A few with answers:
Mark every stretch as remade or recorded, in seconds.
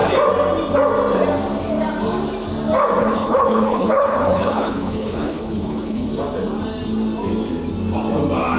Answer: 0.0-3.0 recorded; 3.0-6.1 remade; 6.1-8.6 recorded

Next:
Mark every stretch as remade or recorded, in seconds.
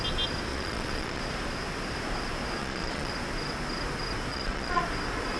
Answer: 0.0-0.5 recorded; 0.5-1.2 remade; 1.2-2.6 recorded; 2.6-3.1 remade; 3.1-4.3 recorded; 4.3-4.8 remade; 4.8-5.4 recorded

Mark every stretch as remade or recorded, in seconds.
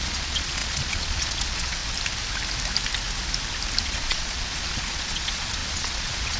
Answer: 0.0-1.8 remade; 1.8-3.8 recorded; 3.8-6.4 remade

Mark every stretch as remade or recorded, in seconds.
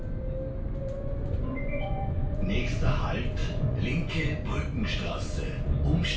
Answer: 0.0-0.8 recorded; 0.8-2.9 remade; 2.9-3.4 recorded; 3.4-4.3 remade; 4.3-6.2 recorded